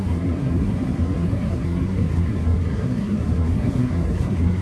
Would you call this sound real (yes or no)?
no